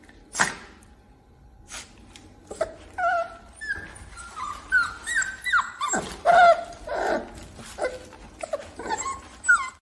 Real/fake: real